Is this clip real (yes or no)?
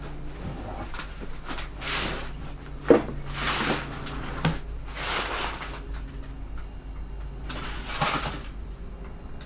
yes